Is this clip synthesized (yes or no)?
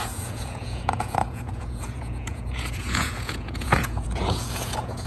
yes